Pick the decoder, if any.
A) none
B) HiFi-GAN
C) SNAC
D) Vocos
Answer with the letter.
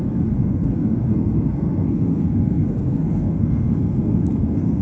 C